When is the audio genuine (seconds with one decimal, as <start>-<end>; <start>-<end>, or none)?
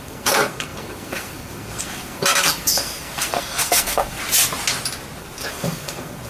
4.2-5.2